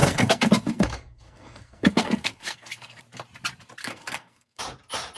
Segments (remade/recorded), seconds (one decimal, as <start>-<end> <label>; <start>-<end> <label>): 0.0-3.0 remade; 3.0-3.8 recorded; 3.8-4.6 remade; 4.6-5.2 recorded